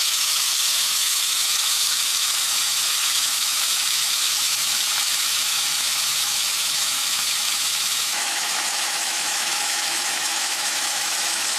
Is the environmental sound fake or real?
fake